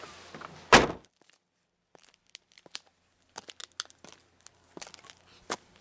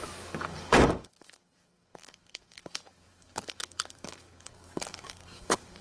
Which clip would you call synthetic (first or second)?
second